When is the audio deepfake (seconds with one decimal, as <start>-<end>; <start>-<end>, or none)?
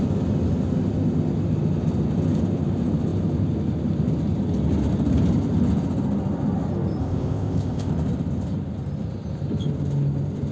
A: 7.0-7.9